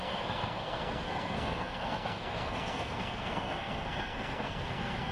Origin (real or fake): fake